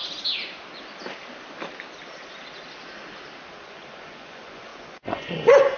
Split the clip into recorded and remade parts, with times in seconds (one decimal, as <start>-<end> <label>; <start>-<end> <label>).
0.0-3.5 recorded; 3.5-5.8 remade

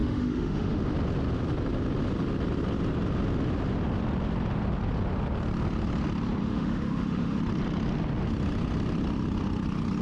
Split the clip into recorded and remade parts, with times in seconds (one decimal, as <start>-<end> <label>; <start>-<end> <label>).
0.0-0.8 remade; 0.8-6.4 recorded; 6.4-7.4 remade; 7.4-10.0 recorded

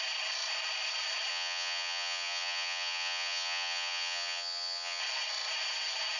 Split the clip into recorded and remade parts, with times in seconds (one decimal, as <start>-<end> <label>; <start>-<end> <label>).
0.0-1.3 recorded; 1.3-5.0 remade; 5.0-6.2 recorded

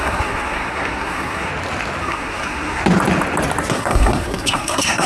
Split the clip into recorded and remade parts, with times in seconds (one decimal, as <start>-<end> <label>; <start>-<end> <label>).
0.0-1.5 remade; 1.5-2.0 recorded; 2.0-2.8 remade; 2.8-3.7 recorded; 3.7-5.1 remade

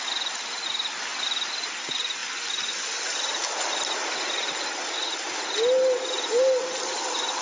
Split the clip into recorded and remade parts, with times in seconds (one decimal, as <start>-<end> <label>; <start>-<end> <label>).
0.0-7.4 recorded

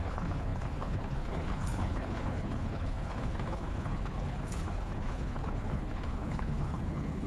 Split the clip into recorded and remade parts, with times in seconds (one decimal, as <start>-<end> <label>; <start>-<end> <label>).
0.0-7.3 remade

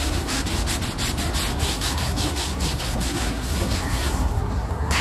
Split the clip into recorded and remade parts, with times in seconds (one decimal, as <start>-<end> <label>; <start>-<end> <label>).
0.0-0.5 remade; 0.5-1.5 recorded; 1.5-5.0 remade

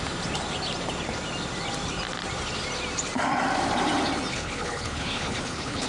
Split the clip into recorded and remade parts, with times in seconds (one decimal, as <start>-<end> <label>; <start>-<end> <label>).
0.0-4.3 recorded; 4.3-5.9 remade